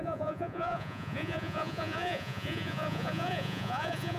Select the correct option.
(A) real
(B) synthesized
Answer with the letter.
B